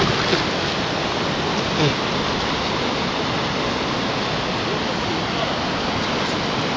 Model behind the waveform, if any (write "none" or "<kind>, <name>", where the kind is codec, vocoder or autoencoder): none